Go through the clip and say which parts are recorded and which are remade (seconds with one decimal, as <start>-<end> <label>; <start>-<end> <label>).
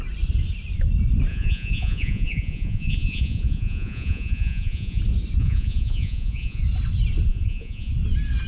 0.0-1.3 recorded; 1.3-5.0 remade; 5.0-5.4 recorded; 5.4-6.6 remade; 6.6-7.3 recorded; 7.3-7.9 remade; 7.9-8.5 recorded